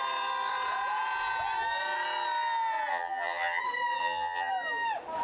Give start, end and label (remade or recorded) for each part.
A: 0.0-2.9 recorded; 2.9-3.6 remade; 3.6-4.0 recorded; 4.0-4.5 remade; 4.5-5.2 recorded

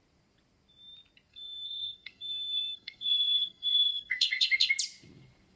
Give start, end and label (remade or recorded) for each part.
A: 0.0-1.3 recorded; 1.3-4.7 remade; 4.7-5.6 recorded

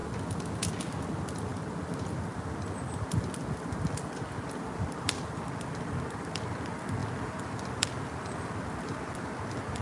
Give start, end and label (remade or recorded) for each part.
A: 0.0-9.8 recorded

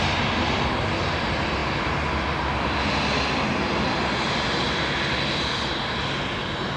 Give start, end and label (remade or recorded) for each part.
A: 0.0-6.8 recorded

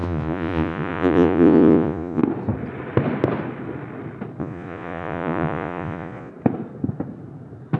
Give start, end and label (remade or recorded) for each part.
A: 0.0-2.2 remade; 2.2-4.4 recorded; 4.4-6.3 remade; 6.3-7.8 recorded

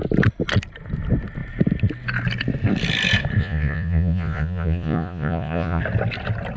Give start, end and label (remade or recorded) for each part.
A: 0.0-3.4 recorded; 3.4-5.8 remade; 5.8-6.6 recorded

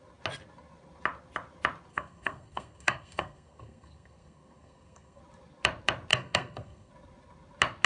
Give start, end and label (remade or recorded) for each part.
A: 0.0-1.9 recorded; 1.9-5.2 remade; 5.2-6.1 recorded; 6.1-6.9 remade; 6.9-7.9 recorded

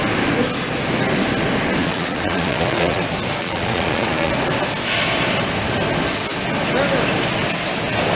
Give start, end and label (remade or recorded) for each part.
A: 0.0-1.8 recorded; 1.8-3.0 remade; 3.0-3.4 recorded; 3.4-4.3 remade; 4.3-8.2 recorded